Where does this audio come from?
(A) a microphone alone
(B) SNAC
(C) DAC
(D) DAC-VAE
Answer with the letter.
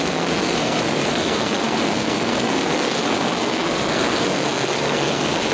B